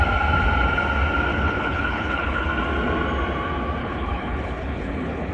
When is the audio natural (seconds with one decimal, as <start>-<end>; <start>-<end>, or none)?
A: 0.0-1.3; 2.5-3.8